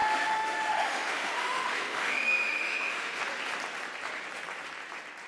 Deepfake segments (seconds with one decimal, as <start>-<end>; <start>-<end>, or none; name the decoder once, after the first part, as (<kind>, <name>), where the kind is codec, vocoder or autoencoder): 0.0-3.2 (autoencoder, DAC-VAE)